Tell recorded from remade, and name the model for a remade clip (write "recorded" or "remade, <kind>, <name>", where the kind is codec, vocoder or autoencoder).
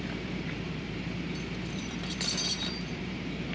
remade, vocoder, BigVGAN v2